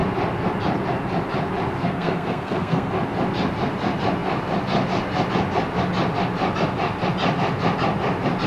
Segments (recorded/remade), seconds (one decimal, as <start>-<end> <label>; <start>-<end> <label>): 0.0-1.8 recorded; 1.8-2.9 remade; 2.9-8.5 recorded